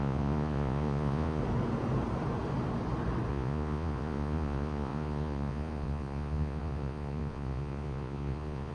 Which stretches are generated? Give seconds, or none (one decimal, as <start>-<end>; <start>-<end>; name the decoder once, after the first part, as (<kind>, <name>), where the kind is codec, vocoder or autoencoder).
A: 0.0-1.4 (vocoder, Vocos); 3.3-8.7

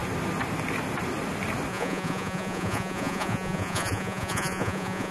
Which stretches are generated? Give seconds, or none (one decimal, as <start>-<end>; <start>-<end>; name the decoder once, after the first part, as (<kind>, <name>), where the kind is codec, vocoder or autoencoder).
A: 1.7-5.1 (vocoder, Vocos)

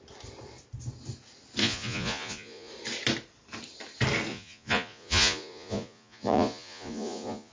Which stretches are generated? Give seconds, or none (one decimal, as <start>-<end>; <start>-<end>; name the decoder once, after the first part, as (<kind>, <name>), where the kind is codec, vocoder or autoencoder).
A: 1.6-2.7 (vocoder, Vocos); 4.3-7.5

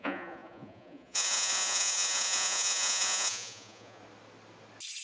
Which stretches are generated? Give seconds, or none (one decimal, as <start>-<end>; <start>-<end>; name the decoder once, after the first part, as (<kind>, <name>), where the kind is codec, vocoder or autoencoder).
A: 0.0-4.0 (vocoder, Vocos)

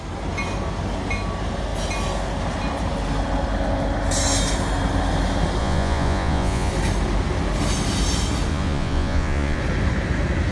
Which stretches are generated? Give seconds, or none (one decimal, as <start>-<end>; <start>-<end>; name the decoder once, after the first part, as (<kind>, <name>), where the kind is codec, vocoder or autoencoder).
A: 5.6-6.7 (vocoder, Vocos); 8.5-9.6